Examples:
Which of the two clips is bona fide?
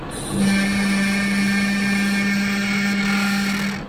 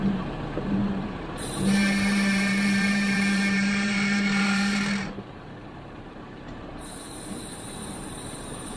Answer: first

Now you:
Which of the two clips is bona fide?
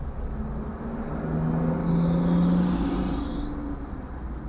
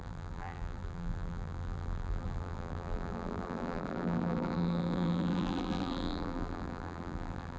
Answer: first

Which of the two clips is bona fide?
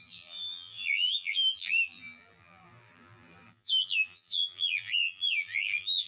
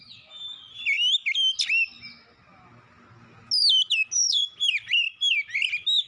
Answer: second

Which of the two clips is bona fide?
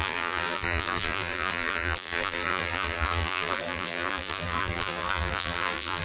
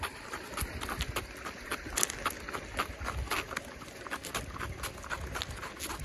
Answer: second